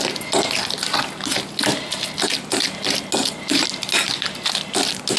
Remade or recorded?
recorded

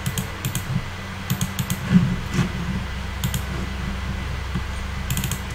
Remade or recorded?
recorded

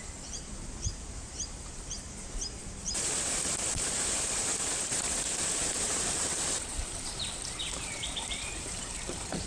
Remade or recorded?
remade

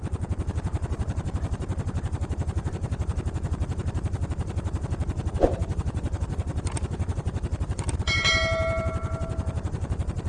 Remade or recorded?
remade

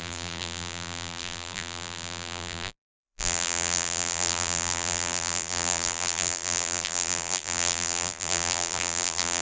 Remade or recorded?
remade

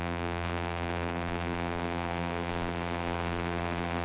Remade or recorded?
remade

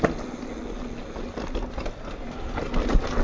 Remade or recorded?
recorded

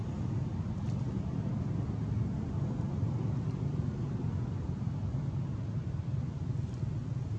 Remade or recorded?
recorded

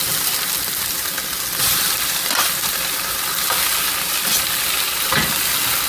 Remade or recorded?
recorded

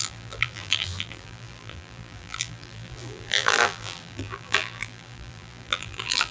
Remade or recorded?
remade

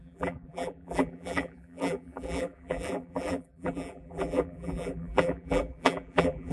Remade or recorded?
remade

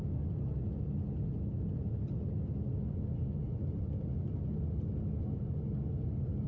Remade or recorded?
recorded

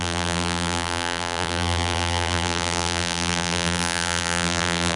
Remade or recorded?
remade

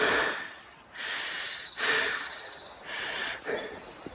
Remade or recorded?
recorded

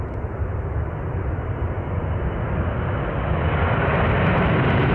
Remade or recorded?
recorded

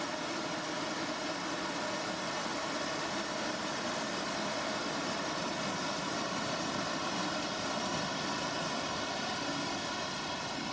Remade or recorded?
remade